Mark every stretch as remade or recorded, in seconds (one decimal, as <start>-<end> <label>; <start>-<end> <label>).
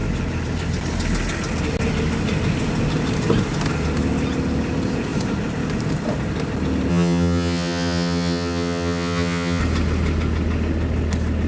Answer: 0.0-6.9 recorded; 6.9-9.6 remade; 9.6-11.5 recorded